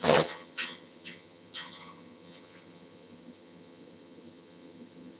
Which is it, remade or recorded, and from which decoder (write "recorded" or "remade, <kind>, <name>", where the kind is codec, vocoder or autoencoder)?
remade, vocoder, HiFi-GAN